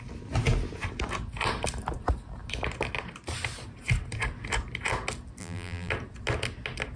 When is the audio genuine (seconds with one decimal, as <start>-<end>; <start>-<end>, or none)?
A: 0.0-5.4; 5.9-7.0